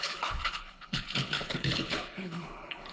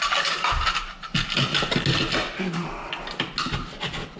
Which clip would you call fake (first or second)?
first